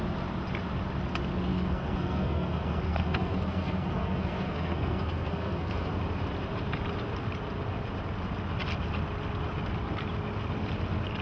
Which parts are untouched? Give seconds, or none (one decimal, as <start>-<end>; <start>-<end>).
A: 0.0-1.5; 5.9-11.2